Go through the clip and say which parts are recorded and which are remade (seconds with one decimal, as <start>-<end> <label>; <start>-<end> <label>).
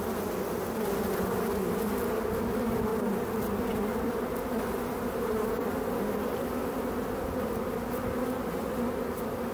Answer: 0.0-9.5 recorded